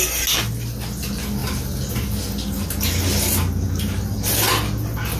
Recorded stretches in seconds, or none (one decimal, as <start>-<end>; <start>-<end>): 0.0-5.2